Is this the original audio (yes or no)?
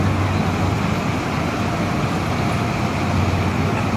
yes